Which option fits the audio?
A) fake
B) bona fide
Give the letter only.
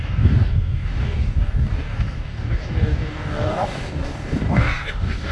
A